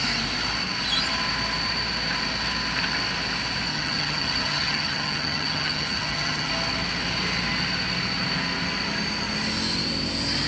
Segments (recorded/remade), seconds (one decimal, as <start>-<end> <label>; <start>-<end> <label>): 0.0-3.7 recorded; 3.7-6.5 remade; 6.5-10.5 recorded